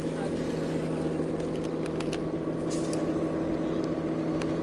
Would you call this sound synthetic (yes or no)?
no